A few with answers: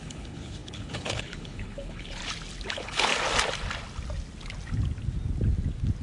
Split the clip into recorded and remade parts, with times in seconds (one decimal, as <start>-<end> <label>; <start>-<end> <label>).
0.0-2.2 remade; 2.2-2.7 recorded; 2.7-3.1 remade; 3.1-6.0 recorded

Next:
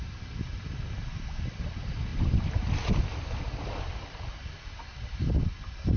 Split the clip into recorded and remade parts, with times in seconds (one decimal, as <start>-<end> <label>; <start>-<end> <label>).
0.0-6.0 recorded

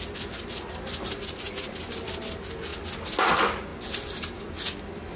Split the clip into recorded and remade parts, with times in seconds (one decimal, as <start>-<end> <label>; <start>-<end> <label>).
0.0-5.2 recorded